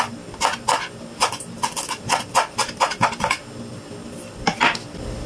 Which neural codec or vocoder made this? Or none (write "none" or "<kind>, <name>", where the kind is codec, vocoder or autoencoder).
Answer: none